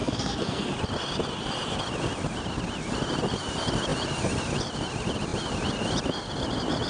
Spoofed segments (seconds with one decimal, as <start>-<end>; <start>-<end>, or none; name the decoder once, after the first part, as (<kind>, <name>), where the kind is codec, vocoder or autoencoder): 0.0-0.7 (codec, SNAC)

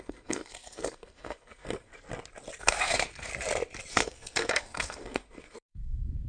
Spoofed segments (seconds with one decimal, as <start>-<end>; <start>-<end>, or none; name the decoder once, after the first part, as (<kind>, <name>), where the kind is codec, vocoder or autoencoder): 0.0-1.9 (codec, SNAC); 2.6-3.3; 3.9-6.3

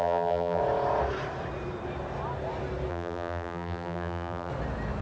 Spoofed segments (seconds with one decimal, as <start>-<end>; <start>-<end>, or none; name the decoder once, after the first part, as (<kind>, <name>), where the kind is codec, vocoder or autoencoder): 0.0-0.6 (vocoder, BigVGAN v2); 2.9-4.5

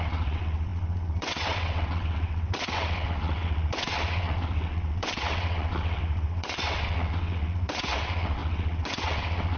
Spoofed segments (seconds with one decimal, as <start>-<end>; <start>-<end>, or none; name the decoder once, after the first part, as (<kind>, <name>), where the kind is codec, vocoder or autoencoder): 0.0-9.6 (vocoder, WaveNeXt)

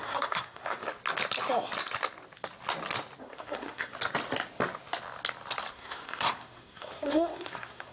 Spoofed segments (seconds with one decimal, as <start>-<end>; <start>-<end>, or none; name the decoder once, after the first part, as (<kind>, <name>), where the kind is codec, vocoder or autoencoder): 0.0-0.8 (codec, SNAC); 3.2-3.9; 5.7-7.9

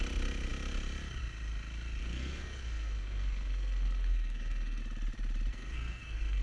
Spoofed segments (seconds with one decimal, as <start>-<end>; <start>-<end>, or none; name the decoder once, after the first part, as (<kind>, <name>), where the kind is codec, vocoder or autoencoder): 2.0-4.8 (codec, SNAC); 5.5-6.4